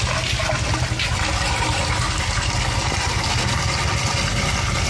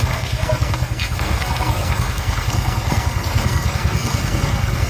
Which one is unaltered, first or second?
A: first